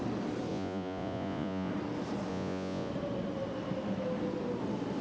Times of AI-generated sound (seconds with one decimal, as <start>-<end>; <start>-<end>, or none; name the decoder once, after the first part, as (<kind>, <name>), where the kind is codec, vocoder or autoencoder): 0.5-1.7 (vocoder, Vocos); 2.3-2.9